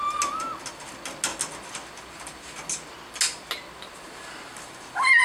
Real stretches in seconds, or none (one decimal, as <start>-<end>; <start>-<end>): 0.0-5.2